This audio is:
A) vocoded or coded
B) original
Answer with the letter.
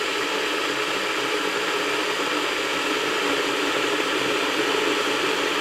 B